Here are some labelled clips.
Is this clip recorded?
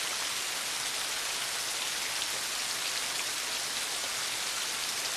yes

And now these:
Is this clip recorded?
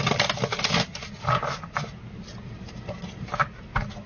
yes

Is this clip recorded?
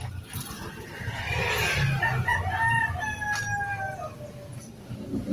yes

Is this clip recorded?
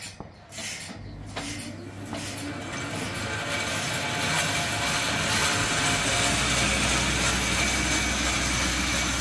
yes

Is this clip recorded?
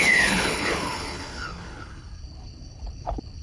no